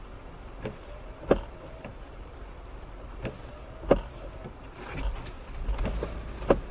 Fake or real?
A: real